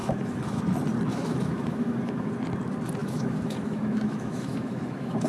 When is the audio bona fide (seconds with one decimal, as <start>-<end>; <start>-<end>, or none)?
0.6-1.1; 2.3-3.0